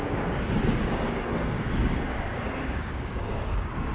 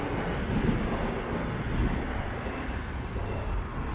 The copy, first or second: first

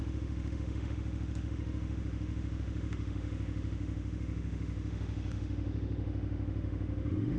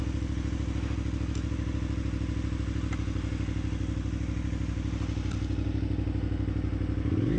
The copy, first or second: first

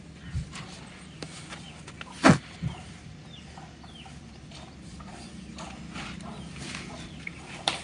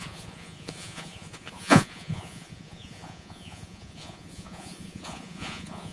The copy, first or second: second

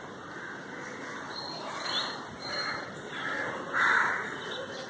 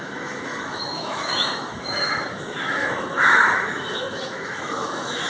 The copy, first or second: second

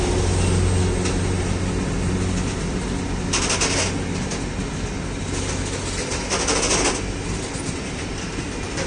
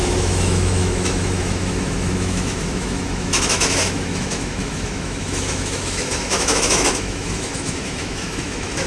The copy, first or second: second